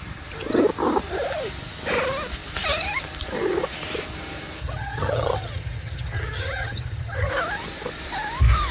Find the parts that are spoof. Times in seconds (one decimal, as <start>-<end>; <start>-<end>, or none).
4.6-7.3